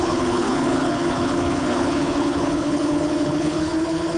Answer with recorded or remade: remade